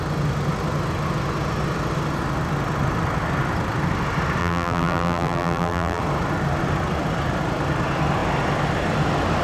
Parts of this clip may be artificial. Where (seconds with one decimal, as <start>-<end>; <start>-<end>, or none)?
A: 4.4-6.0